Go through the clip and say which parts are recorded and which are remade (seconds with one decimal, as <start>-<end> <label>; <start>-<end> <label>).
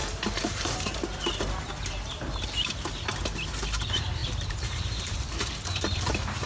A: 0.0-1.2 remade; 1.2-4.2 recorded; 4.2-6.5 remade